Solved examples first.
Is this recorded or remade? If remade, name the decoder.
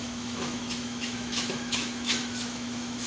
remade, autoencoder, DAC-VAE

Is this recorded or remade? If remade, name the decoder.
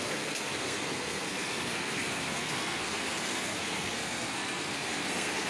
remade, codec, SNAC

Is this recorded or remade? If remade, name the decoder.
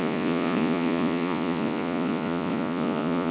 remade, vocoder, Vocos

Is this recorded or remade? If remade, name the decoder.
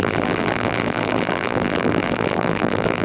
remade, vocoder, BigVGAN v2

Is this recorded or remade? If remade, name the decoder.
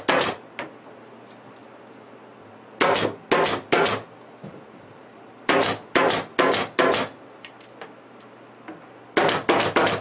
recorded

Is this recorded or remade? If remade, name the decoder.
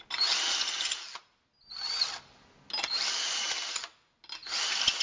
recorded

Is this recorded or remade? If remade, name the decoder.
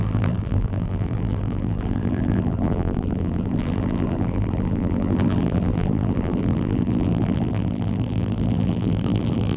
remade, vocoder, BigVGAN v2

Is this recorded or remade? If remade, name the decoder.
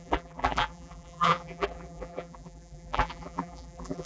remade, vocoder, BigVGAN v2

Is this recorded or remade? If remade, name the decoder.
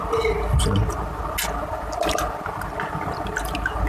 recorded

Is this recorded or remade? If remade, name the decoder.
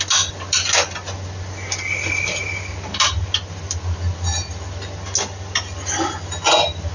recorded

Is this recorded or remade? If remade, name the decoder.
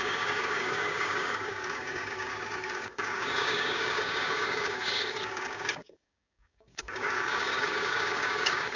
remade, codec, DAC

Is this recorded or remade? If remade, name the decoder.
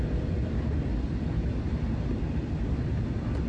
remade, vocoder, BigVGAN v2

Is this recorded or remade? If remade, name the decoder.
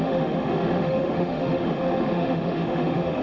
remade, autoencoder, DAC-VAE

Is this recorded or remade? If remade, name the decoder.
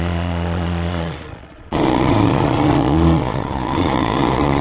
remade, vocoder, Vocos